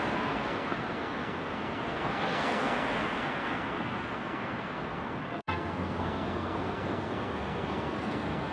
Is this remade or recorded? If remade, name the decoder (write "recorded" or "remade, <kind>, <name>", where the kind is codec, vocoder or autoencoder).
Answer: remade, codec, SNAC